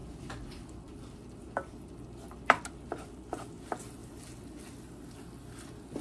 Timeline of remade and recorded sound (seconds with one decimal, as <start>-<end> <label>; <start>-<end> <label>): 0.0-6.0 recorded